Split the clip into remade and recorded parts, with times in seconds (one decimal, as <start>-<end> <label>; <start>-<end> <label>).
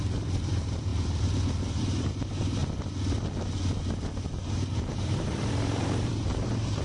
0.0-0.9 remade; 0.9-2.0 recorded; 2.0-2.6 remade; 2.6-4.7 recorded; 4.7-6.8 remade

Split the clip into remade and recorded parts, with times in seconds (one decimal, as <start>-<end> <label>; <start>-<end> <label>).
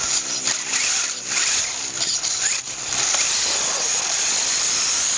0.0-5.2 remade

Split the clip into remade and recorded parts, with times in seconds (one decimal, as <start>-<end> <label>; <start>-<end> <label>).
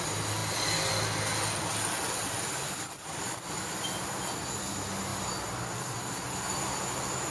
0.0-7.3 recorded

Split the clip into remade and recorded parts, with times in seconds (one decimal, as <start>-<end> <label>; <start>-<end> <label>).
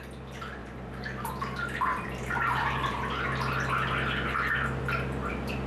0.0-0.6 recorded; 0.6-1.3 remade; 1.3-1.9 recorded; 1.9-3.0 remade; 3.0-5.7 recorded